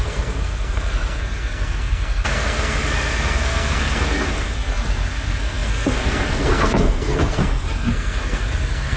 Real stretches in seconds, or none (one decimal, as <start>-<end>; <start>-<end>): none